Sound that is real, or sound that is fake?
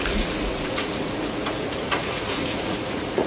fake